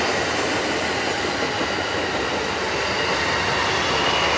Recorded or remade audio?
recorded